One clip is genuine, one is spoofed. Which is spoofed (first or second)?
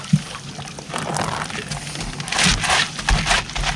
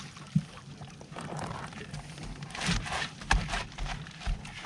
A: second